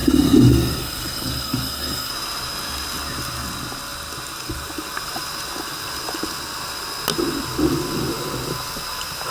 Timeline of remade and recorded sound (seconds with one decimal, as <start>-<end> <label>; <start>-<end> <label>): 0.0-2.1 remade; 2.1-9.3 recorded